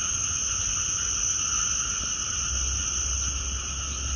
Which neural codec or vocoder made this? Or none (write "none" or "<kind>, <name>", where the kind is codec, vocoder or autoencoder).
none